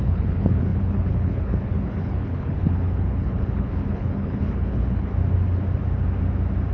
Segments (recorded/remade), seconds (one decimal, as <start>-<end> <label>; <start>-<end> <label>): 0.0-5.1 remade; 5.1-6.7 recorded